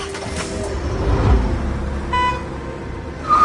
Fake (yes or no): no